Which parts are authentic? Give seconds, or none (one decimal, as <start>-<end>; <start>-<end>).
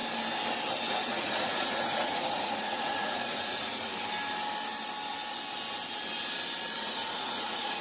0.0-0.9; 3.9-6.8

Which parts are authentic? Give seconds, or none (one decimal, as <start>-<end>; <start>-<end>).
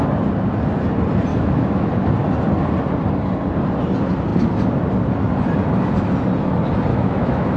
0.0-1.3; 1.9-6.9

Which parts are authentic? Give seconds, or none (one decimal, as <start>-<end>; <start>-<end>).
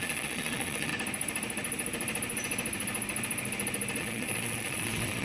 0.9-4.0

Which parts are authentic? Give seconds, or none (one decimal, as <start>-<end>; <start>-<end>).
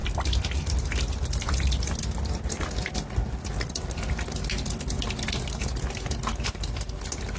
0.0-7.4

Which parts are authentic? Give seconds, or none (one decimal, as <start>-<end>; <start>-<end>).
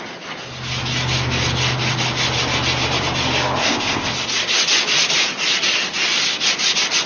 0.0-3.6; 4.1-7.1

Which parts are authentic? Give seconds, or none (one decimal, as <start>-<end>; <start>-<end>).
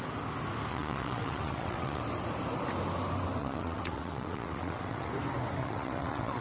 0.0-0.7; 2.0-3.4; 5.1-5.6